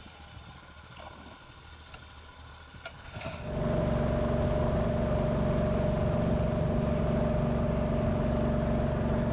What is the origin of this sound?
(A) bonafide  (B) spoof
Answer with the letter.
A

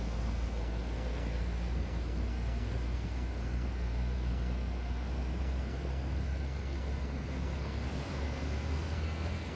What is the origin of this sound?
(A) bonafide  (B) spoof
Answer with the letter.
B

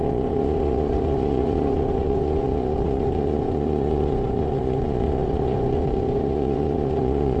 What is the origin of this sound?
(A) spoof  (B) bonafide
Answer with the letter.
A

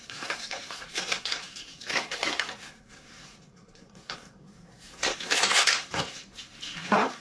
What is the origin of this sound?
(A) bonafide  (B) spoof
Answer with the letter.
B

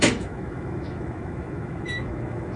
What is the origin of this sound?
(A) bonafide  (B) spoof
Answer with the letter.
B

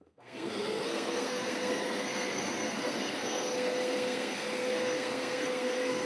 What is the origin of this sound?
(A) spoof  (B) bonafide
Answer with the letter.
A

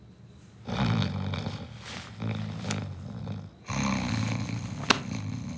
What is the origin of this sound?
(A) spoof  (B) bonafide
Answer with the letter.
B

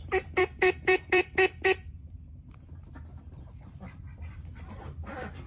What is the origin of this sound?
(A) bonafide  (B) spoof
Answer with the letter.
B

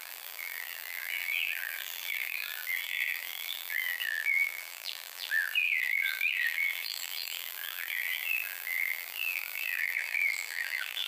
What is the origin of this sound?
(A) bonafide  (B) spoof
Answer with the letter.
B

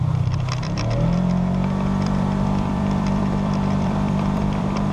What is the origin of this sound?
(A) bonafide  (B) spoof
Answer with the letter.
B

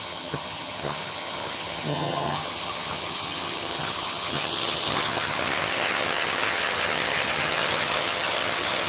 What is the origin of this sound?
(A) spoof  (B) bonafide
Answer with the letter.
A